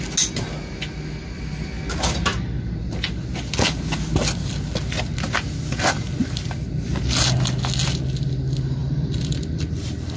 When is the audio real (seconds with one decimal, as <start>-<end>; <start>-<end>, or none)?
0.0-8.8